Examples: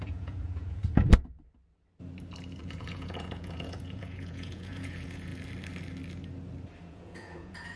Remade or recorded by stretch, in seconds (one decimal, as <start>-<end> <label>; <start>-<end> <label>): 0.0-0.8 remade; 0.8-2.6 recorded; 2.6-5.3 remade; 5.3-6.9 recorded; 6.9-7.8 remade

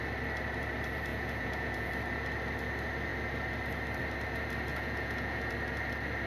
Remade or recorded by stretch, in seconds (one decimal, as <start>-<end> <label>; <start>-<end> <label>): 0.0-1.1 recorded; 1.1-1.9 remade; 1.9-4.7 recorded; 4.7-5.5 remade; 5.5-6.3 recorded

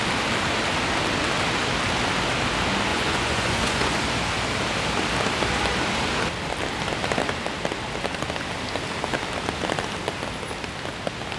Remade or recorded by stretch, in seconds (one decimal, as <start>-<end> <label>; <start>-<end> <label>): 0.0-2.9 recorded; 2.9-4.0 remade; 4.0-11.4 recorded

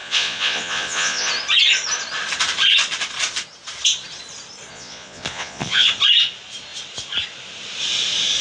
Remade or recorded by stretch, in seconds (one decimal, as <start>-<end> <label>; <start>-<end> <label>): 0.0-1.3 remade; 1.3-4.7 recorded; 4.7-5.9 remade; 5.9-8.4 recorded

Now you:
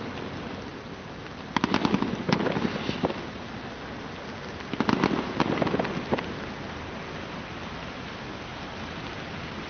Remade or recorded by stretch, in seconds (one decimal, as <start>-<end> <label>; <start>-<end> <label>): 0.0-9.7 recorded